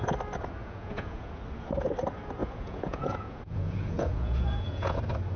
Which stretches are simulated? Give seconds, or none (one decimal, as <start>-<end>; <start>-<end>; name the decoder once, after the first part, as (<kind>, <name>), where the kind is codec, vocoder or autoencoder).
0.6-1.4 (vocoder, Vocos); 2.4-5.0